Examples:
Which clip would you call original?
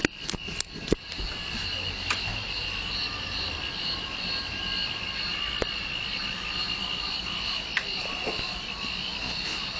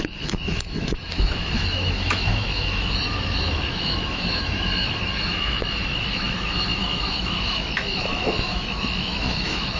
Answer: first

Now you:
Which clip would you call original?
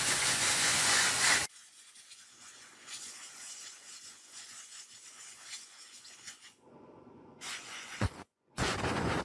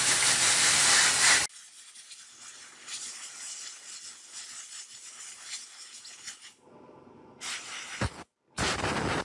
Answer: second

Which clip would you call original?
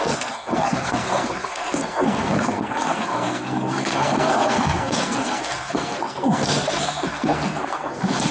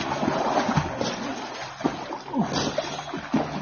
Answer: second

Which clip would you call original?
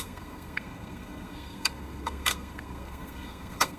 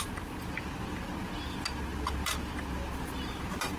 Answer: second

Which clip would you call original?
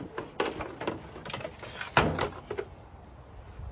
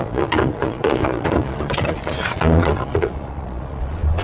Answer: first